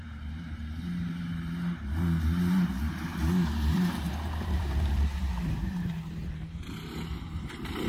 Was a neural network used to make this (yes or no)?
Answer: yes